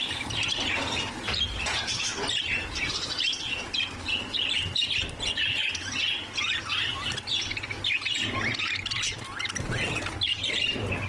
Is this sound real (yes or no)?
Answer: yes